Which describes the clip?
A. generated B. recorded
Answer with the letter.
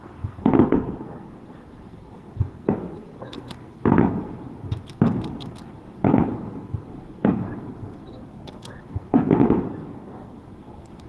A